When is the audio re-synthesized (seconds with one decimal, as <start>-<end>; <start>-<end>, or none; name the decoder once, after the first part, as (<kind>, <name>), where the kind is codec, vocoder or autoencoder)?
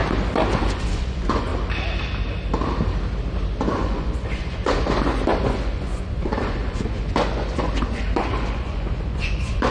0.6-1.5 (vocoder, Vocos); 3.6-9.7